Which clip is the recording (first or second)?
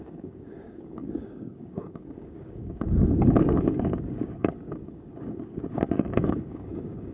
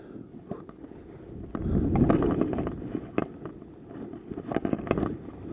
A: second